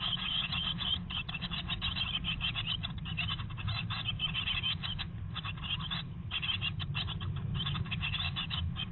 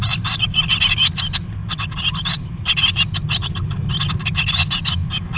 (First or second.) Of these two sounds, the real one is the second